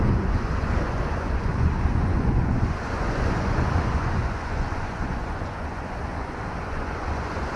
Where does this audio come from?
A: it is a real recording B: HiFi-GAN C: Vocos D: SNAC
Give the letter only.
C